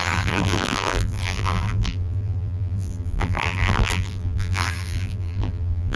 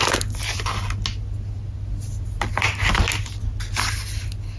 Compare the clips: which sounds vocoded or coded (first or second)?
first